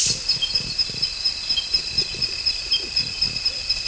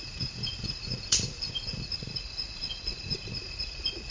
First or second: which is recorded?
first